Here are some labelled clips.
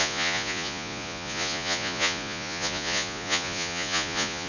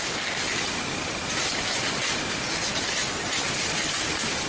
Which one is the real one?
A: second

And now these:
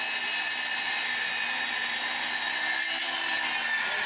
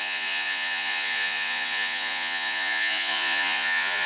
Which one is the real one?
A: first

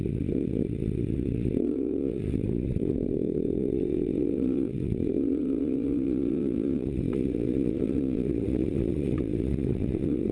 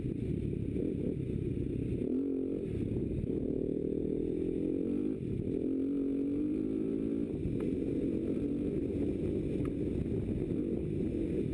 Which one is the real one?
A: second